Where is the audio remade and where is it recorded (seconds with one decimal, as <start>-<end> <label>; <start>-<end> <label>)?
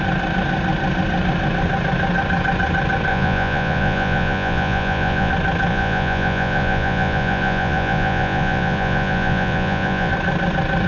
0.0-3.1 recorded; 3.1-5.3 remade; 5.3-5.7 recorded; 5.7-10.1 remade; 10.1-10.9 recorded